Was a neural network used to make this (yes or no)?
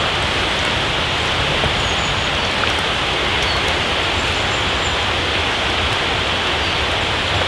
no